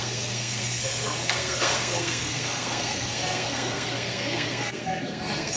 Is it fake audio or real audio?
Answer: fake